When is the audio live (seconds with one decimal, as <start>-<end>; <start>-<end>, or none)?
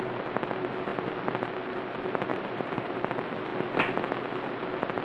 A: 0.0-2.3; 3.0-5.0